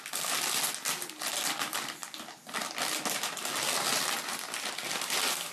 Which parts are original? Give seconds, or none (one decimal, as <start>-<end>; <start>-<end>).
0.0-5.5